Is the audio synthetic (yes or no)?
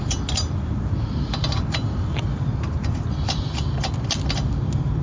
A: no